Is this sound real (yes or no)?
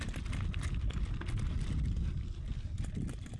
yes